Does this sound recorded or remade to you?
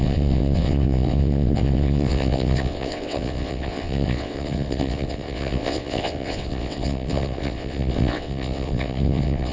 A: remade